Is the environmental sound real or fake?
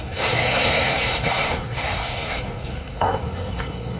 fake